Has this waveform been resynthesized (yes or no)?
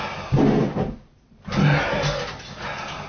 no